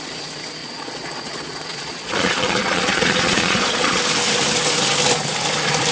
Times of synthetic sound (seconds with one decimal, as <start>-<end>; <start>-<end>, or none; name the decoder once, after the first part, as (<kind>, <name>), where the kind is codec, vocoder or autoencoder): 0.6-4.0 (vocoder, Vocos)